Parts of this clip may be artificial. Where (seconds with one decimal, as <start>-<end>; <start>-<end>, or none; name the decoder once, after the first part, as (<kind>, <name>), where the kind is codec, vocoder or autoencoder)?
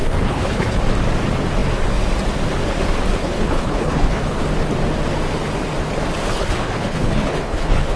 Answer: 0.0-0.8 (codec, HILCodec); 3.2-4.4; 6.3-8.0